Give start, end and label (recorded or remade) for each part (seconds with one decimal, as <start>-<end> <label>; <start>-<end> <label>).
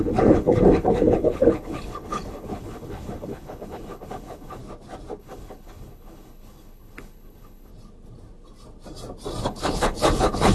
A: 0.0-4.6 remade; 4.6-5.2 recorded; 5.2-7.7 remade; 7.7-9.4 recorded; 9.4-10.5 remade